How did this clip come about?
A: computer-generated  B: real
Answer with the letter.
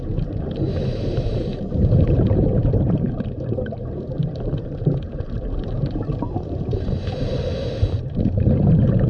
A